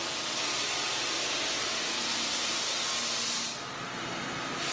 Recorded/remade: recorded